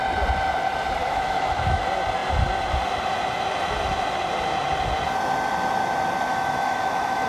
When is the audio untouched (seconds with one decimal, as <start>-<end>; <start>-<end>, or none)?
0.0-1.0; 1.8-6.3